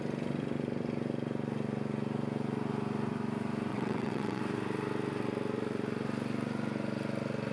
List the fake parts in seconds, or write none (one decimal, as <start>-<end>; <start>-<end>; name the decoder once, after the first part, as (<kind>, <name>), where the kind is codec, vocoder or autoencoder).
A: 3.7-4.4 (vocoder, WaveNeXt)